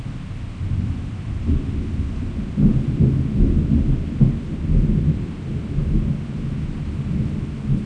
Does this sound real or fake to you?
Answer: real